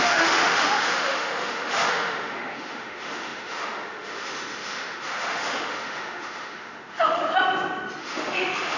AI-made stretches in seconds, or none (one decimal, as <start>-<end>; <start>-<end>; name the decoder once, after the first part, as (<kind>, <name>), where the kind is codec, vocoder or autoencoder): 0.0-7.2 (autoencoder, DAC-VAE); 8.0-8.8